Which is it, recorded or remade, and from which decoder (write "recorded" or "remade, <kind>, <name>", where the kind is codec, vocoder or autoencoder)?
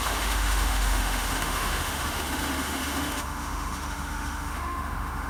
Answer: remade, autoencoder, DAC-VAE